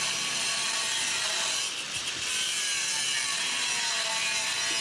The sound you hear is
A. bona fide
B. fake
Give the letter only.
A